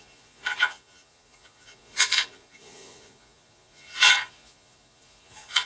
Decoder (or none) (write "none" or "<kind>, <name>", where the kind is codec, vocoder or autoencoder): vocoder, Vocos